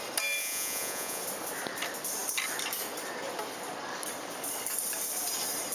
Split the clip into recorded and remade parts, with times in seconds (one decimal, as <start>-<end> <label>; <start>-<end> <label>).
0.0-0.4 recorded; 0.4-1.2 remade; 1.2-5.7 recorded